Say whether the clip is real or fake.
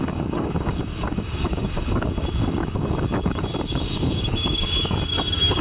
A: fake